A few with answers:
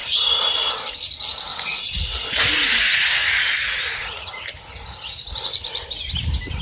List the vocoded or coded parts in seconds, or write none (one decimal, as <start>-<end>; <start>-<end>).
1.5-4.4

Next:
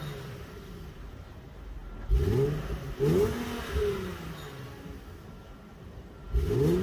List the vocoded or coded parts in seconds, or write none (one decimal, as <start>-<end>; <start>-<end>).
none

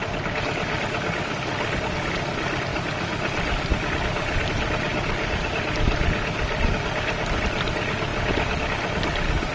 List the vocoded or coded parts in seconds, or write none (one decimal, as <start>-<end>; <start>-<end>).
none